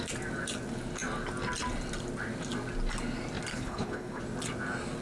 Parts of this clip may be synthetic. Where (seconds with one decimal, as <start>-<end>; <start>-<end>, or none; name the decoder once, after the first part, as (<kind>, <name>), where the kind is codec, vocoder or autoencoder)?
3.5-4.2 (codec, HILCodec)